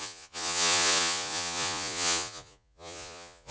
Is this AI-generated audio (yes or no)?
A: yes